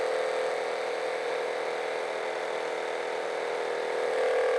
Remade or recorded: recorded